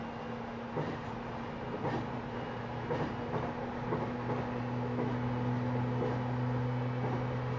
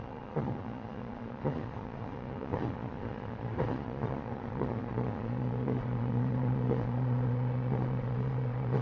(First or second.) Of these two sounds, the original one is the first